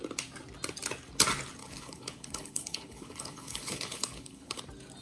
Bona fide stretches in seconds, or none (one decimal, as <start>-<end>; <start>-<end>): 0.0-1.6; 4.6-5.0